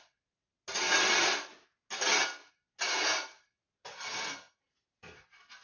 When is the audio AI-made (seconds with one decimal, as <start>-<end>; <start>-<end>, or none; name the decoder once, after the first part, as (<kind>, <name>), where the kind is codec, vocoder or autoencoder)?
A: none

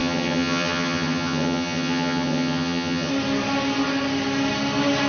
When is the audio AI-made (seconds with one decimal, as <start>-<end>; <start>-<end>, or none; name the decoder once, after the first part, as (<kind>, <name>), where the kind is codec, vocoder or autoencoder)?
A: 0.0-3.1 (vocoder, HiFi-GAN)

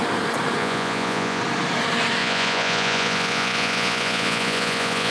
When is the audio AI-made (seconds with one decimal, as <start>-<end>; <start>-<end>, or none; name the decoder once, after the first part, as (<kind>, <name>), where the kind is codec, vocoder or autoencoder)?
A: 0.6-1.4 (vocoder, Vocos); 2.2-5.1

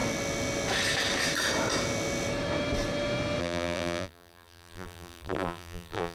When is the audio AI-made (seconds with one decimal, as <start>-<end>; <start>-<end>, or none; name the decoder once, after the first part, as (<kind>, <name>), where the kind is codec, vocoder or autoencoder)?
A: 3.4-6.1 (vocoder, BigVGAN v2)

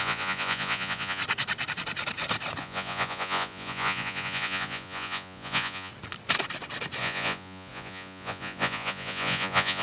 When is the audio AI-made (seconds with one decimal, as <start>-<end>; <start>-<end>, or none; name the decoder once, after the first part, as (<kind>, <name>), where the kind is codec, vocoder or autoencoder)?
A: 0.0-1.2 (vocoder, Vocos); 2.6-5.9; 7.0-9.8

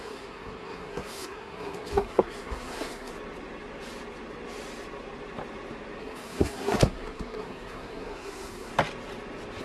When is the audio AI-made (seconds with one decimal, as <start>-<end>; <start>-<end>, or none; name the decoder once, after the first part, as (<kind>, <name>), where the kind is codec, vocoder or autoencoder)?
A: 0.0-3.1 (codec, SNAC); 6.0-8.7